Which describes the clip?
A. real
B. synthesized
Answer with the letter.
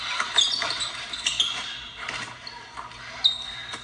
A